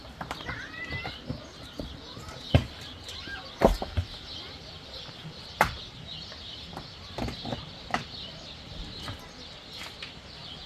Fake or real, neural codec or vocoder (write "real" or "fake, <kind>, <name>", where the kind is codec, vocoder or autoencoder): real